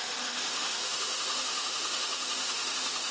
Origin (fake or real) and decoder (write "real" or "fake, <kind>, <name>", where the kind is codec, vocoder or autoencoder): fake, autoencoder, DAC-VAE